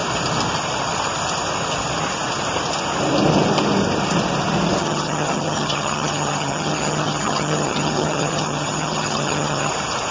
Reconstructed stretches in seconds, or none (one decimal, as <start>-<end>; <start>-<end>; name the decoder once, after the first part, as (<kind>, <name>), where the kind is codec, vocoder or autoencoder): 4.8-9.7 (vocoder, HiFi-GAN)

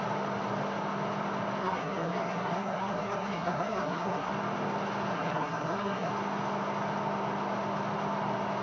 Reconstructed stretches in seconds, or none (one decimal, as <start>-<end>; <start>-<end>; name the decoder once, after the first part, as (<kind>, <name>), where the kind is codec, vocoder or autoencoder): 1.6-4.3 (codec, SNAC); 5.1-6.1

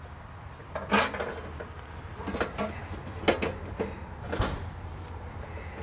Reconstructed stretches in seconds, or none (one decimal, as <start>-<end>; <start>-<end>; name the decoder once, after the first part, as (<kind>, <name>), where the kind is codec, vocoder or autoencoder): none